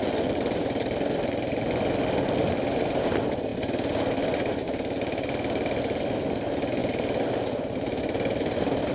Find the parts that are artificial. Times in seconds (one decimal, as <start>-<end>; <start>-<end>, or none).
none